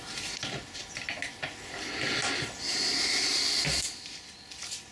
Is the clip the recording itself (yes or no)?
yes